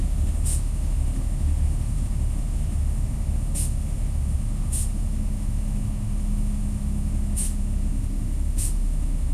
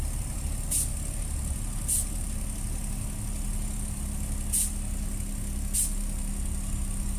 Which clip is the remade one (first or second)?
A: first